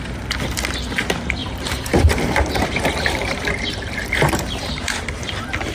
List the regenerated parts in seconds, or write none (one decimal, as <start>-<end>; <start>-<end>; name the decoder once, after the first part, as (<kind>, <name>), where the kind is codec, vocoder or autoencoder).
1.4-4.8 (vocoder, BigVGAN v2)